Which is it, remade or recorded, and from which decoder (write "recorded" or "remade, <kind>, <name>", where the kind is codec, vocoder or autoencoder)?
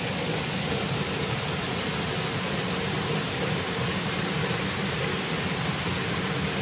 recorded